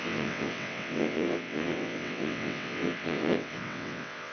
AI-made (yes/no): yes